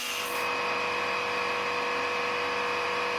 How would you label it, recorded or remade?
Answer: remade